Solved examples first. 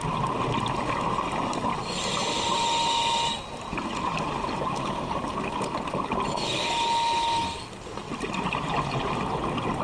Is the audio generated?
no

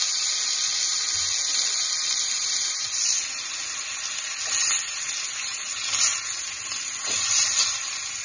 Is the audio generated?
no